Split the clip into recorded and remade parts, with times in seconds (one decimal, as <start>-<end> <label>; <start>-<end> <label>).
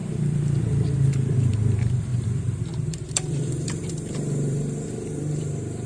0.0-1.4 recorded; 1.4-5.9 remade